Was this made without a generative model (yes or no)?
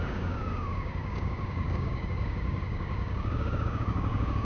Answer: no